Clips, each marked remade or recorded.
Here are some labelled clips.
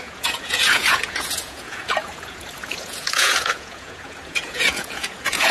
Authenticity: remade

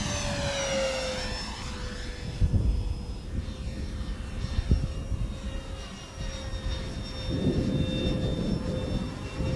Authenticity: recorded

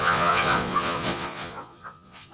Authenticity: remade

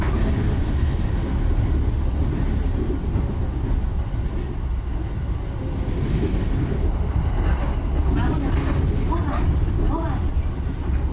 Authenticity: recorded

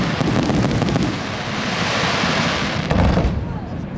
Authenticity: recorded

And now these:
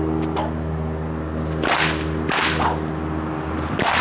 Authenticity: recorded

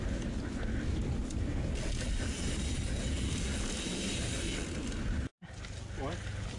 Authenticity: recorded